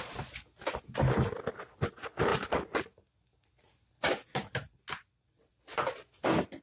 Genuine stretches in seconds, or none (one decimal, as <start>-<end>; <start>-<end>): 0.0-6.6

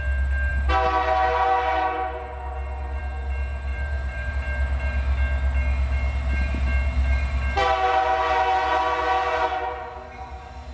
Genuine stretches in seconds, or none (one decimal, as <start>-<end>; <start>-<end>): 0.0-3.7; 4.3-10.7

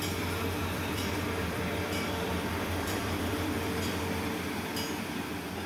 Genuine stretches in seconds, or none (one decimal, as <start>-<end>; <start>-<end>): 0.0-0.6; 4.0-5.7

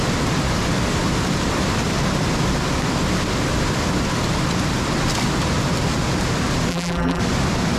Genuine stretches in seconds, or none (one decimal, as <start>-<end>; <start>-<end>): 0.0-6.7; 7.2-7.8

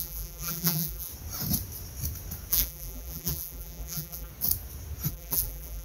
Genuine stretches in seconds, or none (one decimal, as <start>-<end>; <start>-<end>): 1.1-2.5; 4.3-5.1

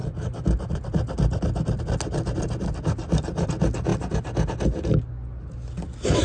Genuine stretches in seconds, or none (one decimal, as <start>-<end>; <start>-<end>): 1.8-6.2